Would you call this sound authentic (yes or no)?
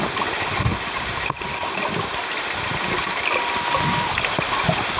yes